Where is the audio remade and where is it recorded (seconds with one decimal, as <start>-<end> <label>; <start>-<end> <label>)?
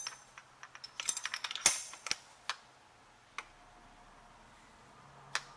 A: 0.0-5.6 recorded